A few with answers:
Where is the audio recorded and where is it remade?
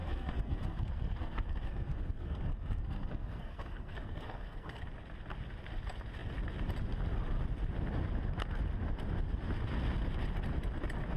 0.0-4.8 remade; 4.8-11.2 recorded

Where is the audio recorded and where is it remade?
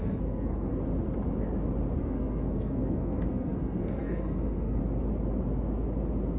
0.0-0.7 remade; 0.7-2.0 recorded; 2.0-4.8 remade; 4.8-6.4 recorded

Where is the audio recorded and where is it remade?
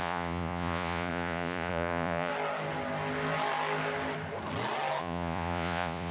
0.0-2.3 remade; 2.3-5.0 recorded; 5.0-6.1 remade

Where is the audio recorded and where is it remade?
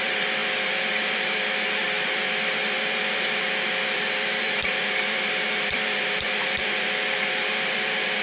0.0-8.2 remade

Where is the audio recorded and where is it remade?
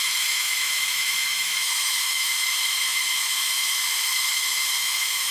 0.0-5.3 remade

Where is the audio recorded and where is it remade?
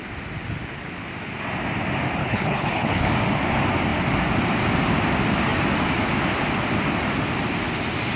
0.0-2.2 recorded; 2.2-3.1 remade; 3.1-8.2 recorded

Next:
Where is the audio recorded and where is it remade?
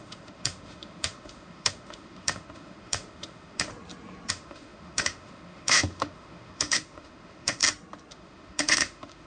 0.0-3.7 remade; 3.7-4.3 recorded; 4.3-7.6 remade; 7.6-8.1 recorded; 8.1-9.3 remade